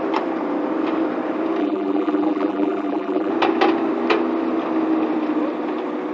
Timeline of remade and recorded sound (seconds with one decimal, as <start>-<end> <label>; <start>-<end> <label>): 0.0-1.6 recorded; 1.6-3.3 remade; 3.3-6.1 recorded